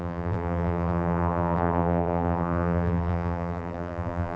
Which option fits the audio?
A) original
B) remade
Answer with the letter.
B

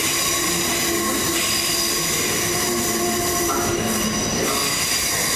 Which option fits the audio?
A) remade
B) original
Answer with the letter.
B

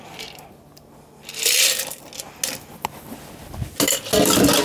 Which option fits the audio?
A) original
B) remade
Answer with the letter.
A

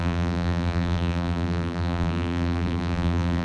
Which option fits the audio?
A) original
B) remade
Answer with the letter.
B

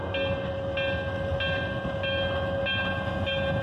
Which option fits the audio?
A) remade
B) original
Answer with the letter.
B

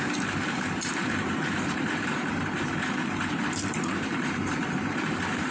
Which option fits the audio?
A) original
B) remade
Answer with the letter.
B